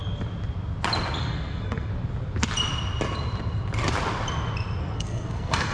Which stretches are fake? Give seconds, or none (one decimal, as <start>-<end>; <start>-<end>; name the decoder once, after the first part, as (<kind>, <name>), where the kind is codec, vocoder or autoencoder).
1.2-1.9 (codec, SNAC); 4.8-5.7